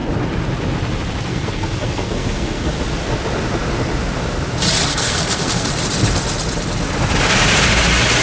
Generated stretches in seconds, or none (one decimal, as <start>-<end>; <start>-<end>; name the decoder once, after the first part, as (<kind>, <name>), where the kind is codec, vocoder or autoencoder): 1.3-2.7 (codec, SNAC); 4.9-5.7